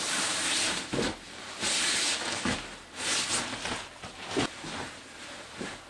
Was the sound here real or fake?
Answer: real